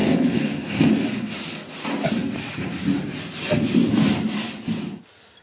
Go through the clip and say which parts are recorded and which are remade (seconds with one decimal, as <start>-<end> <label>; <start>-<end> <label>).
0.0-0.9 remade; 0.9-5.4 recorded